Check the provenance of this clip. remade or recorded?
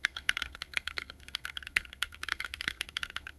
remade